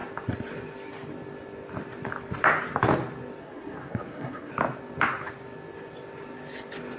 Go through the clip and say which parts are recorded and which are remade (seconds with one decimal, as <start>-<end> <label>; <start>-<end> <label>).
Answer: 0.0-3.4 recorded; 3.4-4.5 remade; 4.5-7.0 recorded